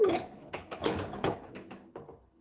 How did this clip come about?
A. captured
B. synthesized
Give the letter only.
B